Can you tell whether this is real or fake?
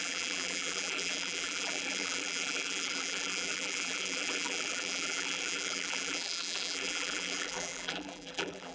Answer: fake